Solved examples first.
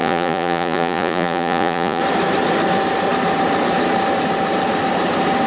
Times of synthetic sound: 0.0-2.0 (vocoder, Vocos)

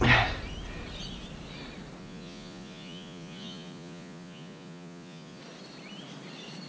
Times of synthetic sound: 2.0-5.4 (vocoder, Vocos)

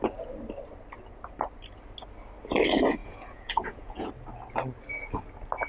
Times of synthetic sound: 3.0-4.1 (vocoder, Vocos)

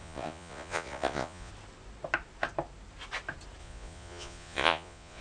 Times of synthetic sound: 0.0-1.5 (vocoder, Vocos); 3.6-5.2

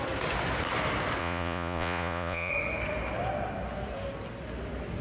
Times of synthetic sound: 1.2-2.5 (vocoder, Vocos)

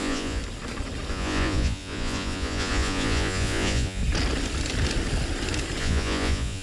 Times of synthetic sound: 0.0-0.4 (vocoder, Vocos); 1.1-4.0; 5.8-6.6

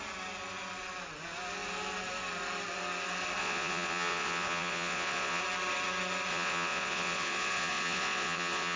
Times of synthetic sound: 3.4-5.4 (vocoder, Vocos); 6.3-8.8

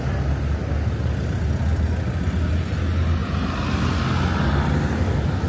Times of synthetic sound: none